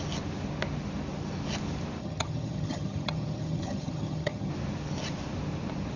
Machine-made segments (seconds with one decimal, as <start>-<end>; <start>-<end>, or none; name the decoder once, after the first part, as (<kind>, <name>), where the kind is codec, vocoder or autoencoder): 2.0-4.5 (vocoder, HiFi-GAN)